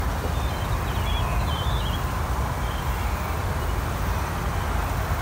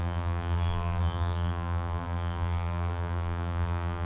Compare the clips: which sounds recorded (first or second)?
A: first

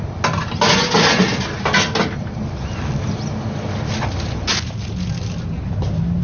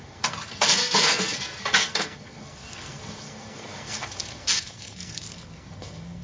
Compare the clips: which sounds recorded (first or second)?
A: first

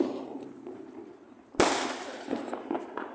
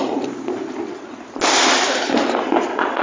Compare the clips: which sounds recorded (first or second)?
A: second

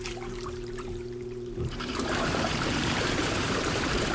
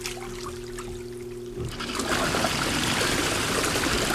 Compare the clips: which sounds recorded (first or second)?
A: second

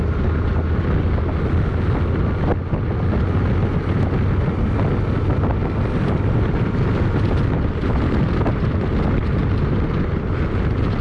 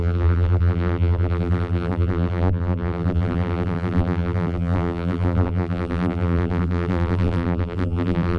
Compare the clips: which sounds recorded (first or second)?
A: first